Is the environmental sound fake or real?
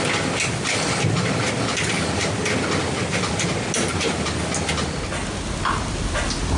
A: real